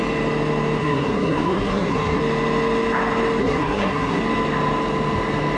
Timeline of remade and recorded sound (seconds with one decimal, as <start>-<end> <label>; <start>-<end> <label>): 0.0-0.8 recorded; 0.8-2.2 remade; 2.2-3.4 recorded; 3.4-4.2 remade; 4.2-5.6 recorded